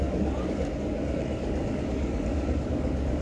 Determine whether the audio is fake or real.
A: fake